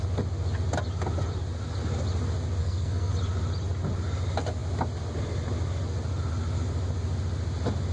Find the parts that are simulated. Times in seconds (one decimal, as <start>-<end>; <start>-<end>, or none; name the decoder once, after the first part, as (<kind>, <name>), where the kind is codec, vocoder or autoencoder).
2.6-3.1 (codec, SNAC)